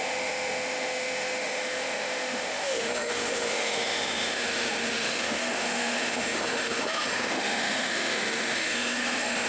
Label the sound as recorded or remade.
remade